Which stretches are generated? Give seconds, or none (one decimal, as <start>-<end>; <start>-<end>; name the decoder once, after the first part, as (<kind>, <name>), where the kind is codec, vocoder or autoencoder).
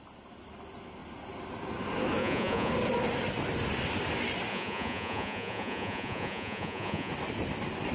2.2-2.7 (vocoder, Vocos); 4.5-7.1